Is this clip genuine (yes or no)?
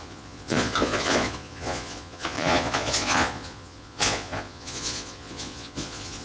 no